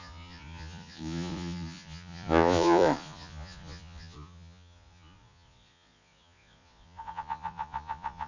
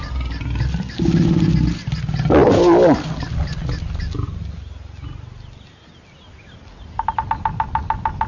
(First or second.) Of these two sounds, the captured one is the second